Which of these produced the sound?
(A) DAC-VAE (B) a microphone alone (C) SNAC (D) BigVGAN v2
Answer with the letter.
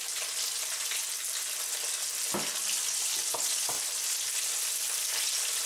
B